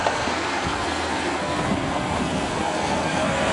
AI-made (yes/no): yes